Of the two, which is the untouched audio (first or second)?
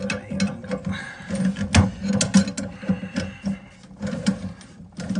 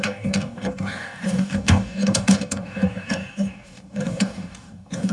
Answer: first